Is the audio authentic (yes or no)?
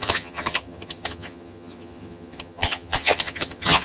no